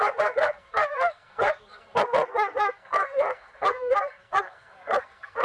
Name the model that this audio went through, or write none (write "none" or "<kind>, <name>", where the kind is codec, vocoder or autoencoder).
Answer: codec, SNAC